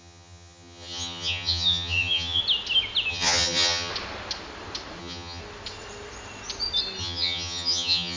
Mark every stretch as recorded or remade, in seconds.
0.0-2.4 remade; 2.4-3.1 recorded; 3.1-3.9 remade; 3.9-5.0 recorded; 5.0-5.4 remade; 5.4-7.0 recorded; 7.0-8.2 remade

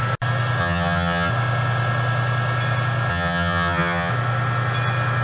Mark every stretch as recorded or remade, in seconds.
0.0-0.6 recorded; 0.6-1.3 remade; 1.3-3.1 recorded; 3.1-4.1 remade; 4.1-5.2 recorded

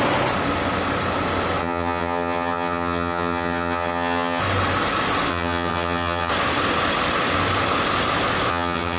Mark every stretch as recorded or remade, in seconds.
0.0-1.6 recorded; 1.6-4.4 remade; 4.4-5.3 recorded; 5.3-6.3 remade; 6.3-8.5 recorded; 8.5-9.0 remade